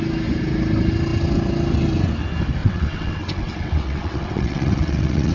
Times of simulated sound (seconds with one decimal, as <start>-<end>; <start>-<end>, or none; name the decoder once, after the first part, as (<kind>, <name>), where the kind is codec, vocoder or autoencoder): 2.6-5.3 (vocoder, WaveNeXt)